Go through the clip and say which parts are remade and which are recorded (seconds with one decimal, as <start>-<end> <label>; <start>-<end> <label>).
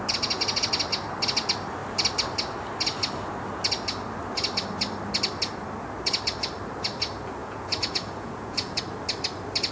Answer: 0.0-7.4 recorded; 7.4-8.8 remade; 8.8-9.7 recorded